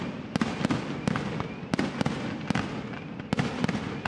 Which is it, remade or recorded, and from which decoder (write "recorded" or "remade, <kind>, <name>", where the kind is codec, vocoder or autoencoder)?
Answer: recorded